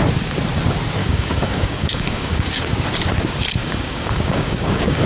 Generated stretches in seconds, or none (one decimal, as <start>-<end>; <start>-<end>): 1.0-2.5; 3.6-5.1